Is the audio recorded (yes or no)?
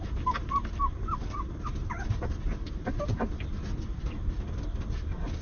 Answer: yes